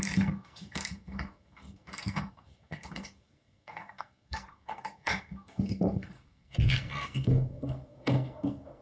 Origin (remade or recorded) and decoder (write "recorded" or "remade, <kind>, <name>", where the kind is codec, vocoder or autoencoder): remade, codec, SNAC